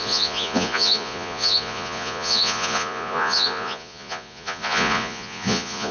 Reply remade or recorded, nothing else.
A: remade